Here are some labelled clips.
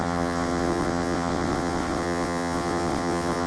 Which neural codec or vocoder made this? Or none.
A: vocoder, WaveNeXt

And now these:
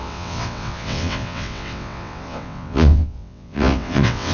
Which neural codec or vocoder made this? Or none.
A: vocoder, WaveNeXt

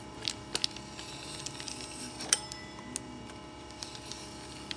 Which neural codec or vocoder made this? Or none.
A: none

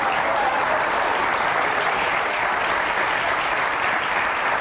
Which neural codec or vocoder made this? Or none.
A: none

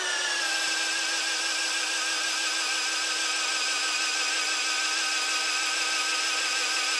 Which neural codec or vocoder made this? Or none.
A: none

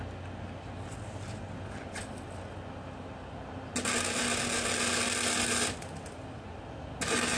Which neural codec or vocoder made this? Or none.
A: none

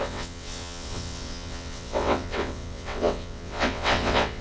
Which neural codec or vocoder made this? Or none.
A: vocoder, WaveNeXt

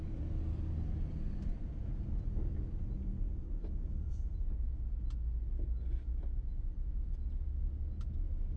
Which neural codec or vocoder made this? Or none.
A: none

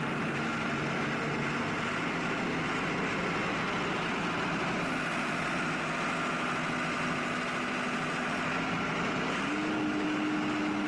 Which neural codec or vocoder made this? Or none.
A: none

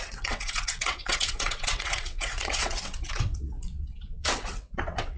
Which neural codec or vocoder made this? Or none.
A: vocoder, WaveNeXt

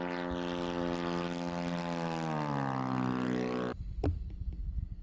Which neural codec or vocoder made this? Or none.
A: none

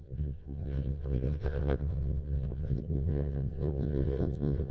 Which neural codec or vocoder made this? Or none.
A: vocoder, WaveNeXt